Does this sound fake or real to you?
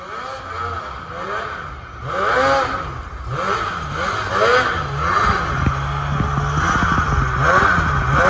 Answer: real